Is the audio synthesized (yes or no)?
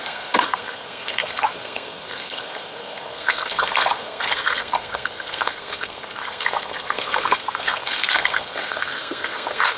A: yes